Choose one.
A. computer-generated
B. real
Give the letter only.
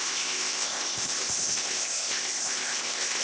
A